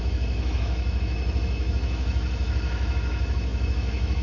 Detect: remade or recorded remade